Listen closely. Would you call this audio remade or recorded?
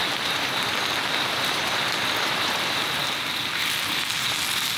remade